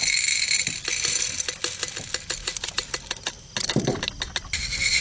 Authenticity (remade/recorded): recorded